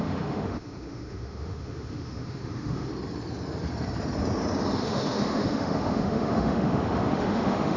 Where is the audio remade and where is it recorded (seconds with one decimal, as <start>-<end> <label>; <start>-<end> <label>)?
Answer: 0.0-2.9 remade; 2.9-4.8 recorded; 4.8-7.8 remade